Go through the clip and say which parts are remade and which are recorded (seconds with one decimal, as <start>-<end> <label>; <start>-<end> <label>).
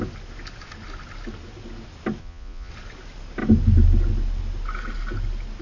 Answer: 0.0-2.2 recorded; 2.2-2.7 remade; 2.7-5.6 recorded